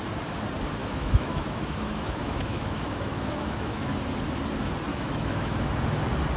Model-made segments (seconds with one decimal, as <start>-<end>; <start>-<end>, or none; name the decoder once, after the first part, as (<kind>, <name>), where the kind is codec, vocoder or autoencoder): 0.8-3.9 (autoencoder, DAC-VAE); 4.9-5.7